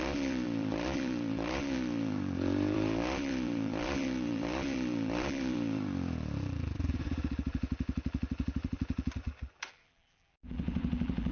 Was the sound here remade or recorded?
remade